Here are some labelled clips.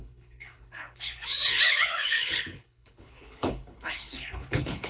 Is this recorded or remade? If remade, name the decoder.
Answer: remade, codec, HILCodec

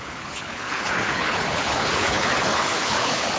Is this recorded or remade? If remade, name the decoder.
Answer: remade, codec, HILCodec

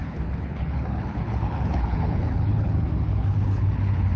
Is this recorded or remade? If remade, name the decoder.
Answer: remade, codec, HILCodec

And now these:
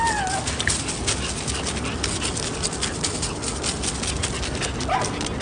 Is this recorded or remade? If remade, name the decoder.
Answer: recorded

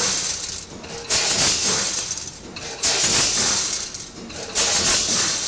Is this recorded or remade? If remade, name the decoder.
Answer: recorded